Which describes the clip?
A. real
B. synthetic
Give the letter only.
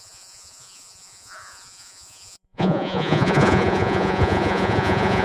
B